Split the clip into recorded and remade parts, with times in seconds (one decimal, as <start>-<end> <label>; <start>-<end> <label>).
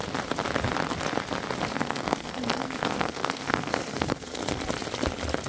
0.0-1.7 recorded; 1.7-4.6 remade; 4.6-5.5 recorded